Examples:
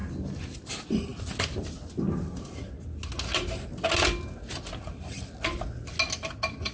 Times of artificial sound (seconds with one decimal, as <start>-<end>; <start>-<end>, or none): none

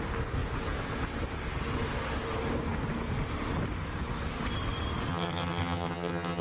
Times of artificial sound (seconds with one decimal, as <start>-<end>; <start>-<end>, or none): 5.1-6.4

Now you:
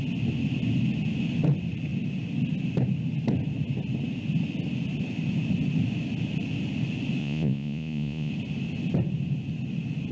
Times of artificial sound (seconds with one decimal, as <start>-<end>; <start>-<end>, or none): 7.2-8.3

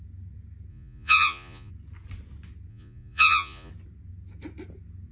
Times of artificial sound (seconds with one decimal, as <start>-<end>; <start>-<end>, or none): 0.7-1.7; 2.7-3.7

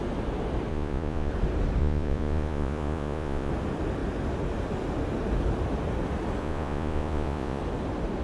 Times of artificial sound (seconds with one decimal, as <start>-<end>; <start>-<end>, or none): 0.7-1.3; 1.8-3.5; 6.4-7.6

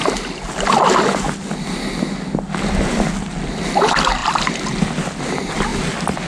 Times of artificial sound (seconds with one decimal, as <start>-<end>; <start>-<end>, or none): 4.2-5.2; 5.7-6.3